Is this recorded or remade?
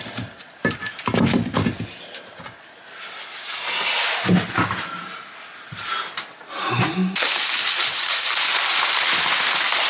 recorded